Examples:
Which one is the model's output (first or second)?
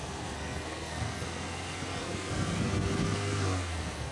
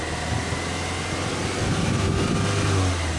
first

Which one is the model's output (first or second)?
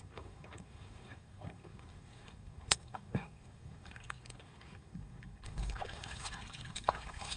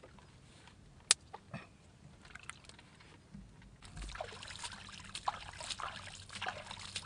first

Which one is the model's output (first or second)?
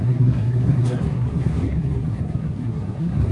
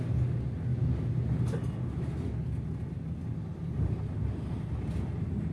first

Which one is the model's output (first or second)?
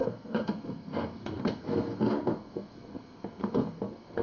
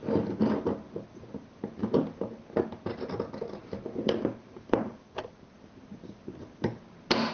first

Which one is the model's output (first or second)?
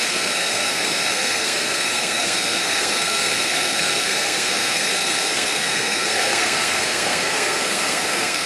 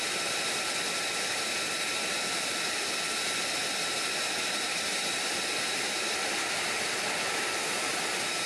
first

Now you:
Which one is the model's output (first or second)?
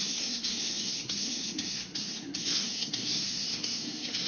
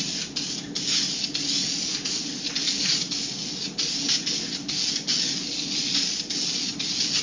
first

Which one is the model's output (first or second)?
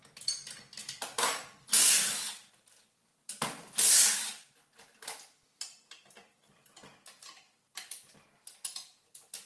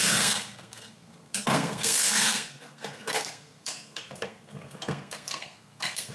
second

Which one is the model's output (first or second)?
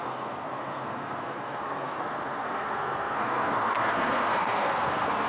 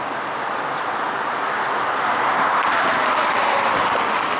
first